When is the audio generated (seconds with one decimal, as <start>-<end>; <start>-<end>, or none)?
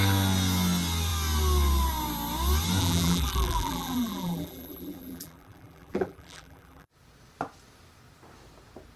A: 2.8-6.9